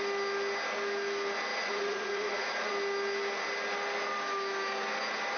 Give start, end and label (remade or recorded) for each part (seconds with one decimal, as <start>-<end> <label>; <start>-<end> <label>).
0.0-1.5 recorded; 1.5-2.7 remade; 2.7-5.4 recorded